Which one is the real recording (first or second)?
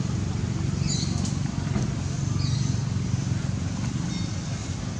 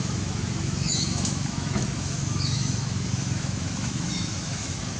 first